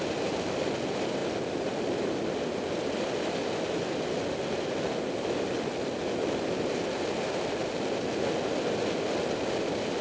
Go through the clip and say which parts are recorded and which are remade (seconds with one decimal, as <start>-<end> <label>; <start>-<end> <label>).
0.0-10.0 recorded